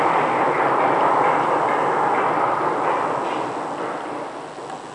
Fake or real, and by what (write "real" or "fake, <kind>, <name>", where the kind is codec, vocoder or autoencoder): real